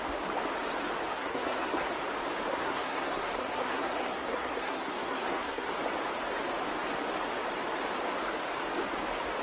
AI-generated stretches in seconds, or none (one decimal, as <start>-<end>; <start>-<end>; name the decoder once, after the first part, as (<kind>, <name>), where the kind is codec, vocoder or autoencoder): 1.1-1.9 (codec, SNAC); 2.5-5.7